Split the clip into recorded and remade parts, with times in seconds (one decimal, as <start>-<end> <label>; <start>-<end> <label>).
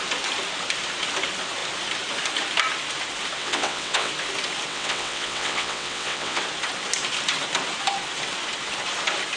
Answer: 0.0-3.4 recorded; 3.4-4.1 remade; 4.1-4.7 recorded; 4.7-6.4 remade; 6.4-9.4 recorded